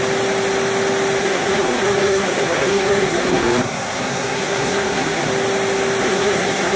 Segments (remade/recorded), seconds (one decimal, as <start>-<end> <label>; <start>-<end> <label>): 0.0-1.2 recorded; 1.2-5.3 remade; 5.3-6.0 recorded; 6.0-6.8 remade